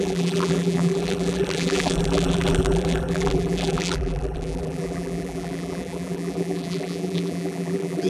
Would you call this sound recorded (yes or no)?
no